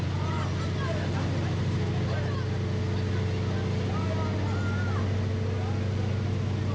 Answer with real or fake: real